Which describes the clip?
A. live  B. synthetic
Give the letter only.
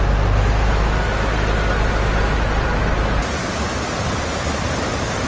A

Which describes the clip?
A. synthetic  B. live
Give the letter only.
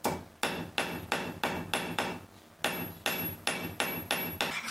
B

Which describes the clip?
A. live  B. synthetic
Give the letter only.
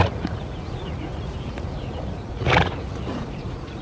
B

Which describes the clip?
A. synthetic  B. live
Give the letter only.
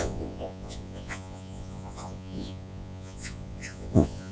A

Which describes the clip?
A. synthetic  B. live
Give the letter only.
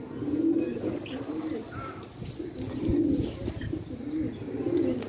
B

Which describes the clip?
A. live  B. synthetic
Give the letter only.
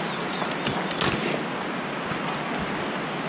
A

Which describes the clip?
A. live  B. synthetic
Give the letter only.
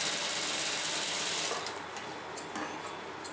A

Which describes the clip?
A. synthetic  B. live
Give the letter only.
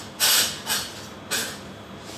B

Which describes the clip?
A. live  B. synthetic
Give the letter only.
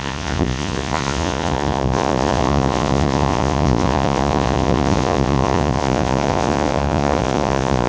B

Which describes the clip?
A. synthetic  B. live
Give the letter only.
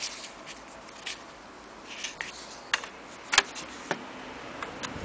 B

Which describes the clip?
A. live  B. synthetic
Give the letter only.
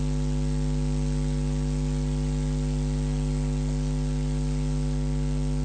A